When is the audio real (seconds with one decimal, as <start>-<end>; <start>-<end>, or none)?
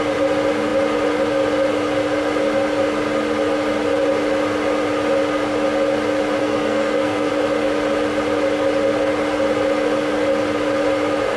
0.0-6.4; 7.3-11.4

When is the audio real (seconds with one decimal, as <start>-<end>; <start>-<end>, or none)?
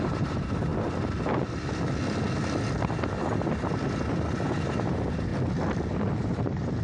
0.7-4.7; 5.3-5.9